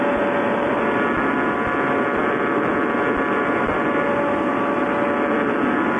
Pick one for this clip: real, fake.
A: real